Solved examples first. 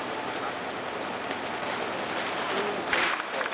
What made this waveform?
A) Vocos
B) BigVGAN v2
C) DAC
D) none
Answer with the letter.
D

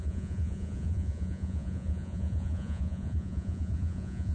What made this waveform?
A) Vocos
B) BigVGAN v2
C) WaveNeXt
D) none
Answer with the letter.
A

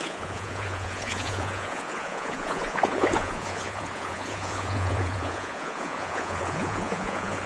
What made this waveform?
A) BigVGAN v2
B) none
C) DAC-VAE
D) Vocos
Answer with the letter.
D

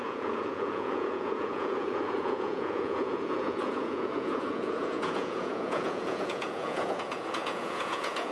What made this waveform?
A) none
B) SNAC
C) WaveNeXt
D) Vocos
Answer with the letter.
D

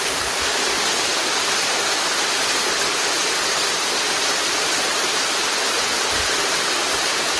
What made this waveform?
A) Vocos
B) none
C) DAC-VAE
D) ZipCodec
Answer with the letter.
B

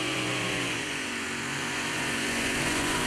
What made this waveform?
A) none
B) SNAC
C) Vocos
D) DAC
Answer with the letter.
C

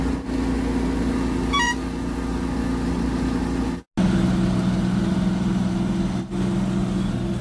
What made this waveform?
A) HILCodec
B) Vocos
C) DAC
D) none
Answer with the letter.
D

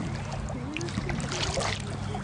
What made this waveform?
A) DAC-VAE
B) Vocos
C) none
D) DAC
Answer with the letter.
C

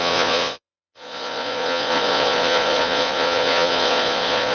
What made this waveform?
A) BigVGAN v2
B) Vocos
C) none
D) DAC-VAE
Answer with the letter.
B